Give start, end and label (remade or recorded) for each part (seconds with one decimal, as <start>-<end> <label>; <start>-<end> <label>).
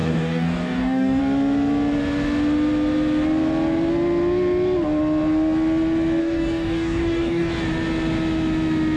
0.0-1.2 remade; 1.2-6.2 recorded; 6.2-7.5 remade; 7.5-9.0 recorded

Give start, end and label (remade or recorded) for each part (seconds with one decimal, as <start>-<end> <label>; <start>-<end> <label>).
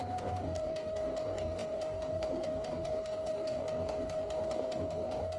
0.0-5.4 remade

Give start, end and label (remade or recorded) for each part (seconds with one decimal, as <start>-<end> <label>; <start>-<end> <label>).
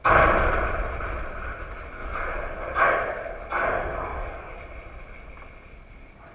0.0-4.1 recorded; 4.1-4.6 remade; 4.6-6.3 recorded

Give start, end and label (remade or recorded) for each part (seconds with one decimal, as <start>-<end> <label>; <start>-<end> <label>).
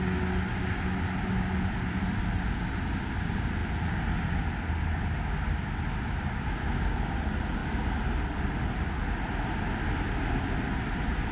0.0-11.3 recorded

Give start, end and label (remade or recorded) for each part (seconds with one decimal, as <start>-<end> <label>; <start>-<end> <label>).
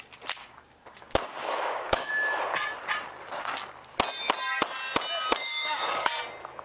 0.0-0.4 recorded; 0.4-2.1 remade; 2.1-5.4 recorded; 5.4-6.1 remade; 6.1-6.6 recorded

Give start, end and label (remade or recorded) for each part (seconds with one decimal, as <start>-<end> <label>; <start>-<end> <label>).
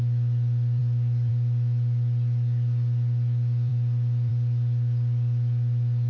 0.0-6.1 recorded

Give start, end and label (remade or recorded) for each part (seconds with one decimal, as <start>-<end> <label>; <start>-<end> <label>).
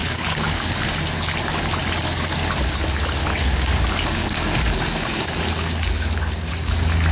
0.0-0.7 remade; 0.7-3.3 recorded; 3.3-6.5 remade; 6.5-7.1 recorded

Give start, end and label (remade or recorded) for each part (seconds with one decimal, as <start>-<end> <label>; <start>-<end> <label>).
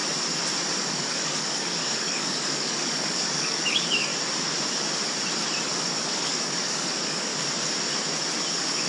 0.0-0.9 recorded; 0.9-4.1 remade; 4.1-5.8 recorded; 5.8-7.3 remade; 7.3-8.5 recorded; 8.5-8.9 remade